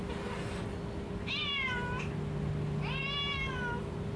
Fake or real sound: real